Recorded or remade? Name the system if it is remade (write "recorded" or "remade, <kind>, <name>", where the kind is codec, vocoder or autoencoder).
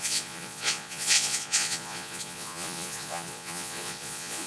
remade, vocoder, Vocos